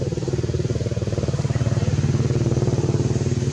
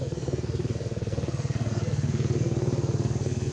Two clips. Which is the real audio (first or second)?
first